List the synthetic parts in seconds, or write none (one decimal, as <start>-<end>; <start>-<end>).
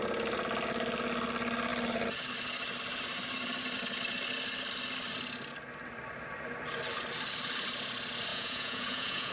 8.3-9.3